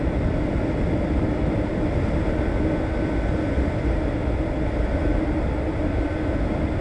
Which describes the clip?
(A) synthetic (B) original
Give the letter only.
B